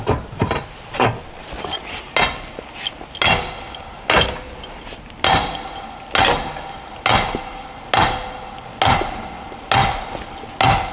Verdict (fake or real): real